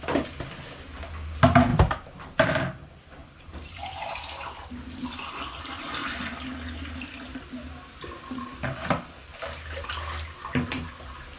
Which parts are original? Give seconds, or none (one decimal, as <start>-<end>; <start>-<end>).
0.0-1.7; 2.5-3.2; 4.2-11.4